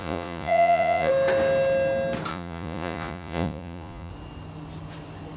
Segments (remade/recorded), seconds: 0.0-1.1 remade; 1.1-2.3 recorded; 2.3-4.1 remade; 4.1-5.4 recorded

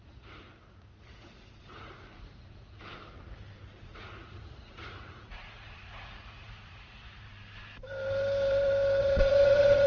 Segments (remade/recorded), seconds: 0.0-2.8 remade; 2.8-3.8 recorded; 3.8-7.3 remade; 7.3-9.0 recorded; 9.0-9.9 remade

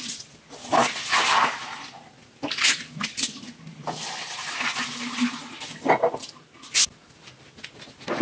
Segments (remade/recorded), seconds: 0.0-8.2 recorded

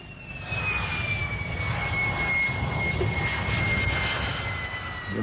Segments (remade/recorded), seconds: 0.0-5.2 recorded

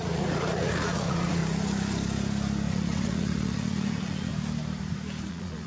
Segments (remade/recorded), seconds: 0.0-1.4 remade; 1.4-2.7 recorded; 2.7-4.3 remade; 4.3-5.3 recorded; 5.3-5.7 remade